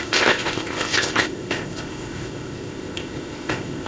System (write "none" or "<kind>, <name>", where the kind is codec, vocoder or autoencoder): codec, ZipCodec